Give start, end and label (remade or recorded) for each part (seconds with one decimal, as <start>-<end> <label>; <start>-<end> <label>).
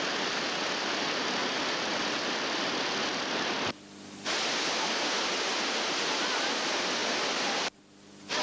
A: 0.0-8.4 recorded